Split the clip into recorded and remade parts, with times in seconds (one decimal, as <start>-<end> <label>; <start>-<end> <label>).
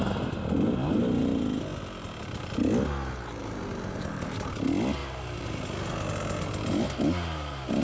0.0-3.4 recorded; 3.4-4.5 remade; 4.5-5.0 recorded; 5.0-5.6 remade; 5.6-7.8 recorded